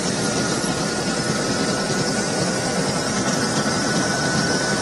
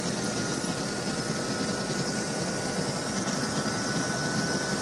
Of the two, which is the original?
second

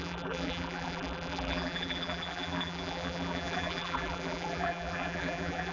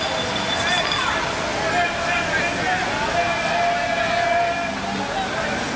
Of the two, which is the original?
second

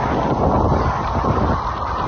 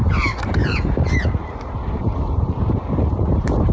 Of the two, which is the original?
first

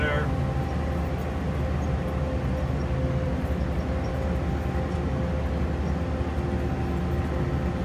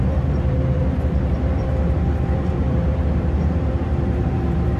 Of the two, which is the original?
first